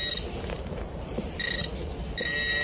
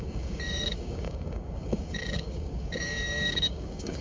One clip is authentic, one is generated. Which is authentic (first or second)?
first